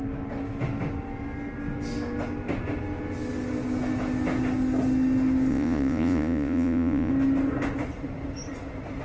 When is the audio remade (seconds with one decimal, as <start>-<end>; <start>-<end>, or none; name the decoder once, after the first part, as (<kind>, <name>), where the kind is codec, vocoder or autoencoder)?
5.5-7.1 (vocoder, Vocos)